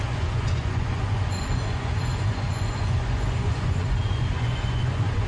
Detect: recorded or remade remade